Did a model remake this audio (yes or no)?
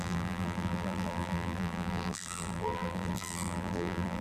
yes